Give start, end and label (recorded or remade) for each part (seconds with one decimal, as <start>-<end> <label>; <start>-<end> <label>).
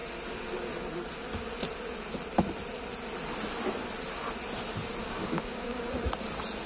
0.0-5.0 recorded; 5.0-5.8 remade; 5.8-6.7 recorded